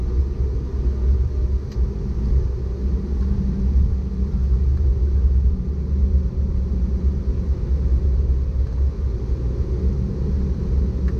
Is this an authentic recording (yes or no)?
yes